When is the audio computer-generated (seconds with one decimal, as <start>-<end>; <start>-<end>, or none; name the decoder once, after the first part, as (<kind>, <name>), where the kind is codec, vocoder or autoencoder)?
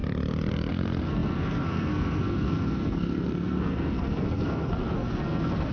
0.7-5.7 (codec, SNAC)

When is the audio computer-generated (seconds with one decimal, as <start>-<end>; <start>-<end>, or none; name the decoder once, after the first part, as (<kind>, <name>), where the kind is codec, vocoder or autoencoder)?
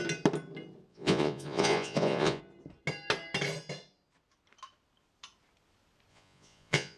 0.9-2.4 (vocoder, Vocos); 6.1-7.0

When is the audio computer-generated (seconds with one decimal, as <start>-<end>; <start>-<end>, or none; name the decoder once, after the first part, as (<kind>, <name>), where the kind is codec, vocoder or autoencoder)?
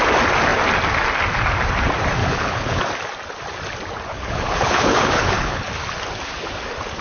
2.2-2.8 (codec, HILCodec); 4.1-5.7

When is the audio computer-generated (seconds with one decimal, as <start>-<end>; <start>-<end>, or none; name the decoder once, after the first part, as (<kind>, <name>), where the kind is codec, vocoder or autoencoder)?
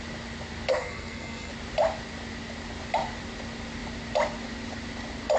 0.7-1.5 (codec, SNAC)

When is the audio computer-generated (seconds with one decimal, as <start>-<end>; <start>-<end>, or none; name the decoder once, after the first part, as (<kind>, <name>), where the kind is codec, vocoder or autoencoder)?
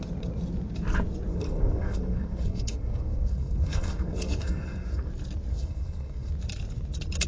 1.3-5.1 (codec, SNAC); 5.5-6.3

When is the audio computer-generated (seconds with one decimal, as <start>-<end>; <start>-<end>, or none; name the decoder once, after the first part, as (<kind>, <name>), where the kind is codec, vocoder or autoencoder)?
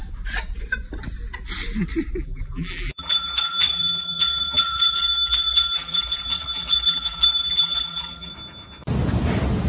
2.2-8.3 (vocoder, BigVGAN v2)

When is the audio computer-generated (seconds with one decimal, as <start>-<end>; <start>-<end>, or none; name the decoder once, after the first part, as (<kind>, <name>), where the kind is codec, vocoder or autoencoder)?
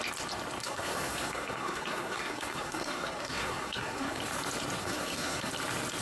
0.6-4.2 (codec, SNAC); 4.8-5.5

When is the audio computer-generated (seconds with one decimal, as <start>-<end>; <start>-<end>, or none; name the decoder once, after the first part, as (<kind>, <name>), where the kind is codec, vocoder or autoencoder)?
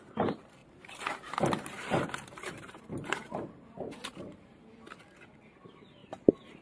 0.6-4.6 (vocoder, BigVGAN v2)